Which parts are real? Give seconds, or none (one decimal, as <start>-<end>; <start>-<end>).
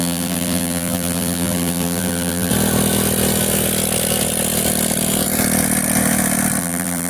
2.5-6.6